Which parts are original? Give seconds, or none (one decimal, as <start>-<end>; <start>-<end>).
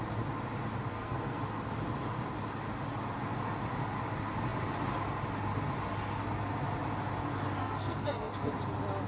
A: 0.0-0.9; 1.4-7.6; 8.5-9.1